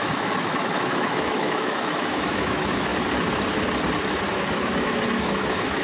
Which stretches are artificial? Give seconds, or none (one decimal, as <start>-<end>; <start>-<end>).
0.0-2.9; 4.5-5.8